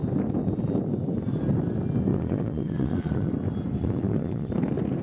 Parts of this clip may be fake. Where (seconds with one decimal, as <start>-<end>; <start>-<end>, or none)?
2.1-3.3; 3.8-4.5